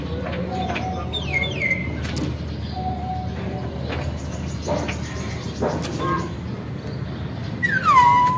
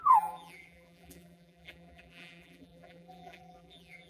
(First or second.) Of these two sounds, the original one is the first